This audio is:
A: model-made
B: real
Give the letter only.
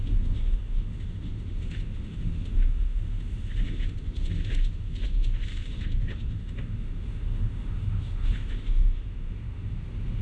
A